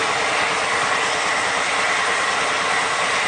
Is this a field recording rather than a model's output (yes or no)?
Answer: yes